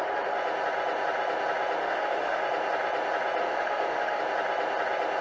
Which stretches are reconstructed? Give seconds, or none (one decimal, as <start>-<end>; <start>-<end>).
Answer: 1.8-2.4; 3.4-4.2